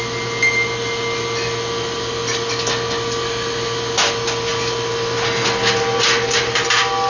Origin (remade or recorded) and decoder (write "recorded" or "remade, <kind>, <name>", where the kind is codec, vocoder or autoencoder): recorded